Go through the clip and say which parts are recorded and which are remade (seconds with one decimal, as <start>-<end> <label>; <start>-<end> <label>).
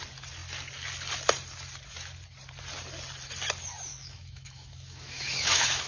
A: 0.0-3.9 recorded; 3.9-5.9 remade